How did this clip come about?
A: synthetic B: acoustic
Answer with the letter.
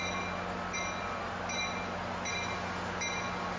B